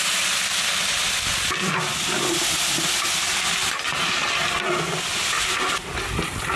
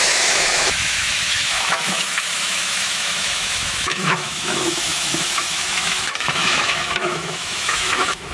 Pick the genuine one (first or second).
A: first